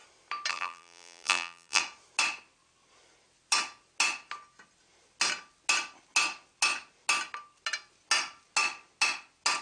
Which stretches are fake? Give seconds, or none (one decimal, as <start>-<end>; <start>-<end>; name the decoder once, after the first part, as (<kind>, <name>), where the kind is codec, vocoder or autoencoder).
0.5-1.8 (vocoder, BigVGAN v2)